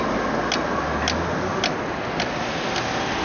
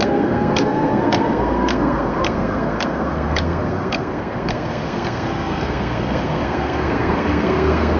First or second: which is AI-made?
second